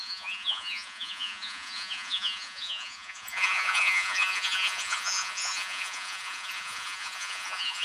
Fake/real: fake